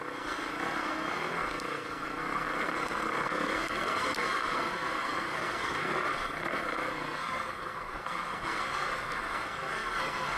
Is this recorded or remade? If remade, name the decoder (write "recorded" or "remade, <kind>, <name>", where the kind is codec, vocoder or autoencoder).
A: remade, codec, SNAC